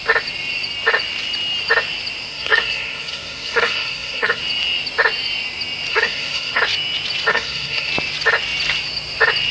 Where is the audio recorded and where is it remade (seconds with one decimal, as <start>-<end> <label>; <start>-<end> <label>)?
0.0-2.3 recorded; 2.3-4.4 remade; 4.4-5.9 recorded; 5.9-6.6 remade; 6.6-7.3 recorded; 7.3-7.9 remade; 7.9-9.5 recorded